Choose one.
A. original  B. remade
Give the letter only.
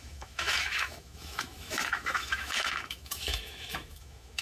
B